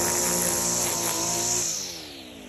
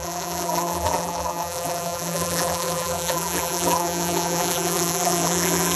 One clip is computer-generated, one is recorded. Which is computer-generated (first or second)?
second